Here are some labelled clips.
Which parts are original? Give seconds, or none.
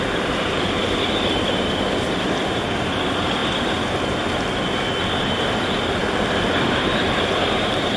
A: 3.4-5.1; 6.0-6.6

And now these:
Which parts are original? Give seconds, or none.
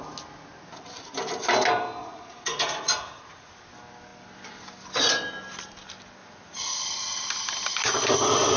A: 0.0-2.0; 3.5-6.2; 6.7-8.6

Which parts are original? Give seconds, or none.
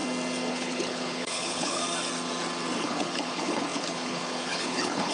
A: 0.0-0.5; 1.8-2.8